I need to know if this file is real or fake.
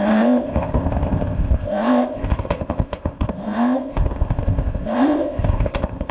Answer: fake